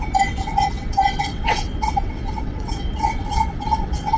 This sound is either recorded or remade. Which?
remade